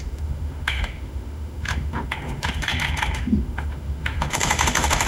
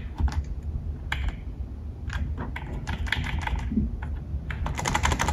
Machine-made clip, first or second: first